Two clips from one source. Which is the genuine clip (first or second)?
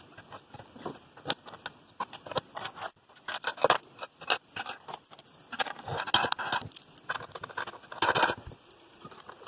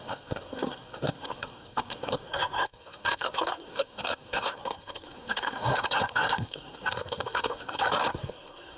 first